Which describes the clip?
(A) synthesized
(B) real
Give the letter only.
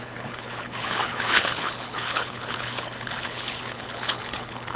A